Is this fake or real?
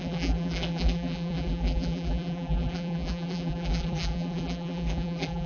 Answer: fake